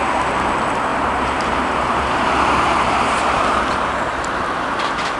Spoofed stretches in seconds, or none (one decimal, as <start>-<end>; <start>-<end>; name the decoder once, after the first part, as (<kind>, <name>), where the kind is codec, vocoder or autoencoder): 0.9-3.4 (vocoder, BigVGAN v2)